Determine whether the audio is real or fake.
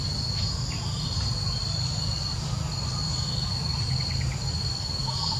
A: real